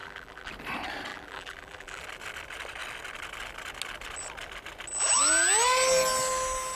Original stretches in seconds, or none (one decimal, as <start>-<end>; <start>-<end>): 0.5-1.1; 2.0-6.8